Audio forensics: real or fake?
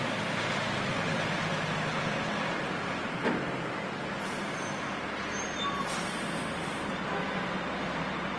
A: real